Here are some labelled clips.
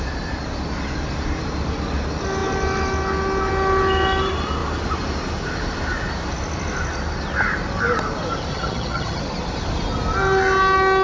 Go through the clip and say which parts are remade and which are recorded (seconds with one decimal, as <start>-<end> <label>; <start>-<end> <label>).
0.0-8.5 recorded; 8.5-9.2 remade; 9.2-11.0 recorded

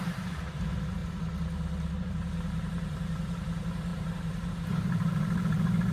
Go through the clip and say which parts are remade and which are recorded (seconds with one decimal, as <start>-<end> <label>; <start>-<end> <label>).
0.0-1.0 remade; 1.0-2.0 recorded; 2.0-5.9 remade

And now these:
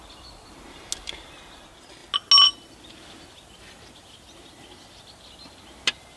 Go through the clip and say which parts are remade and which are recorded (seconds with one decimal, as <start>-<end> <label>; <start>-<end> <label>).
0.0-6.2 recorded

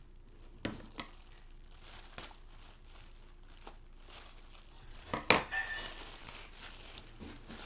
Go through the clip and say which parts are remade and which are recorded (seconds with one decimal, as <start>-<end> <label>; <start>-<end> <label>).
0.0-7.7 recorded

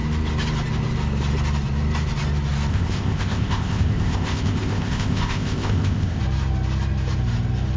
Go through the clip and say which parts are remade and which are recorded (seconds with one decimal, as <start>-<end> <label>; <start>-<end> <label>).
0.0-2.7 recorded; 2.7-6.2 remade; 6.2-7.8 recorded

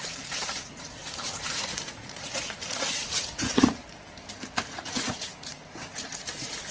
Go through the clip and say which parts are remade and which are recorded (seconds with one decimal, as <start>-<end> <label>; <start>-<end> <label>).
0.0-3.8 remade; 3.8-4.6 recorded; 4.6-6.7 remade